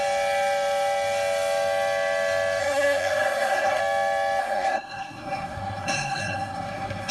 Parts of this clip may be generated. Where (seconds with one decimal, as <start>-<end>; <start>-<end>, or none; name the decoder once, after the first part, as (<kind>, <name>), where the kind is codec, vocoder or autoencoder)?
2.6-3.8 (codec, SNAC); 4.4-7.1